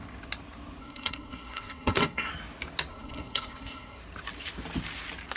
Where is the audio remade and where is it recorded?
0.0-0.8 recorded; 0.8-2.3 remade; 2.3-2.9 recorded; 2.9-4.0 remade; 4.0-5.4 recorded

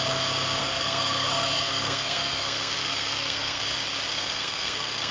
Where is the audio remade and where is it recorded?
0.0-0.6 recorded; 0.6-3.6 remade; 3.6-4.1 recorded; 4.1-5.1 remade

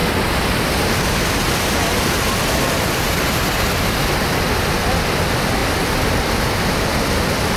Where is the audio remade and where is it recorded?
0.0-7.6 recorded

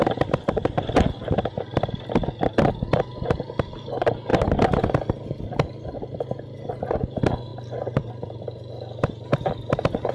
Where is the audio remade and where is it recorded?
0.0-10.1 recorded